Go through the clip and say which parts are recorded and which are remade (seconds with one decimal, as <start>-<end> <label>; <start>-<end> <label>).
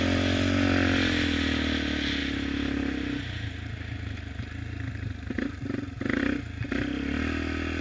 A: 0.0-7.8 recorded